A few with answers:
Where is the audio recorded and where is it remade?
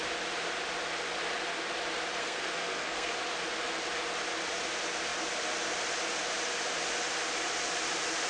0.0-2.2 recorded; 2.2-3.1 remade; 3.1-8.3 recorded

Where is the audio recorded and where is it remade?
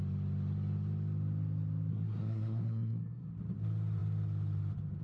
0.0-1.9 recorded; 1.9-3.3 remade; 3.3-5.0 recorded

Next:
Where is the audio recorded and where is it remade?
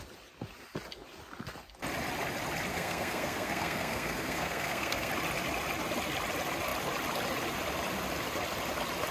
0.0-2.7 recorded; 2.7-5.1 remade; 5.1-9.1 recorded